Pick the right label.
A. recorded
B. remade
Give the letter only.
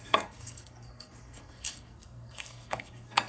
B